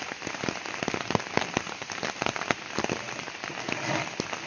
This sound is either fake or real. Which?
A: fake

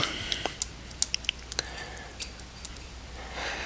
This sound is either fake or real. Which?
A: real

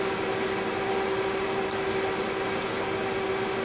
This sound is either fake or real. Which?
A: real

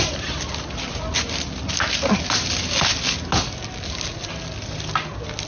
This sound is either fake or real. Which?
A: real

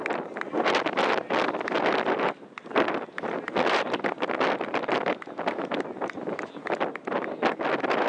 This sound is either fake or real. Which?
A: real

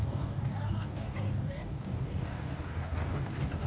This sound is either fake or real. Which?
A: fake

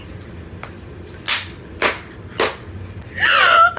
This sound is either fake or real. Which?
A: real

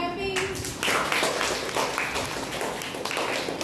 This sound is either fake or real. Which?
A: real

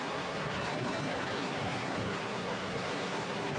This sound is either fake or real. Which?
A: fake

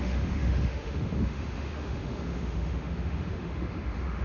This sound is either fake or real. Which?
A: fake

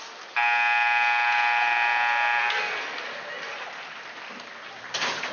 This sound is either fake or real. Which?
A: real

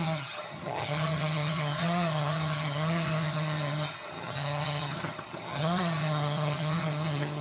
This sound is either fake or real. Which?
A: fake